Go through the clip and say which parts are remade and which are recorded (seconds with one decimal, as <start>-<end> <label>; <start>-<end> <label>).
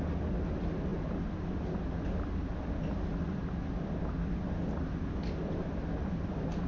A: 0.0-6.7 recorded